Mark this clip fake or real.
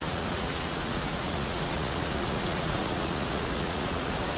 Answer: fake